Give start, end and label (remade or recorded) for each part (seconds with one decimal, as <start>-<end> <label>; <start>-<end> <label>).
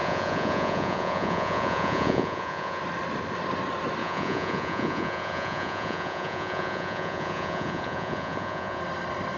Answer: 0.0-2.8 remade; 2.8-4.0 recorded; 4.0-8.8 remade; 8.8-9.4 recorded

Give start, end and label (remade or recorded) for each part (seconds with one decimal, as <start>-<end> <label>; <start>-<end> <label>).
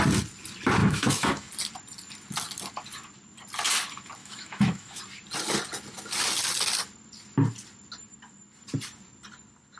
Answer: 0.0-0.8 recorded; 0.8-1.5 remade; 1.5-4.2 recorded; 4.2-5.0 remade; 5.0-9.8 recorded